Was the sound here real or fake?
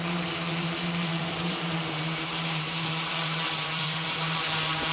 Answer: fake